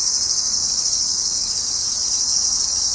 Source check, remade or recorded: remade